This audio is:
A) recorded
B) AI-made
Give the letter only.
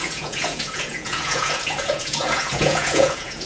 B